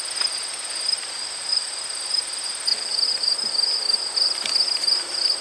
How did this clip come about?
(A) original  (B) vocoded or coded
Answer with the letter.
A